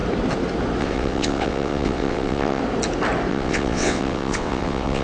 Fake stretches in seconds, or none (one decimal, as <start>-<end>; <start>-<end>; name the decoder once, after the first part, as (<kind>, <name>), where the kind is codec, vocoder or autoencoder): 0.8-2.6 (vocoder, WaveNeXt); 3.3-5.0